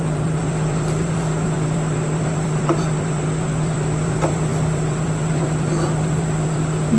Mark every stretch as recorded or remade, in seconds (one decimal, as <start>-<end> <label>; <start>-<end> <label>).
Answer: 0.0-7.0 remade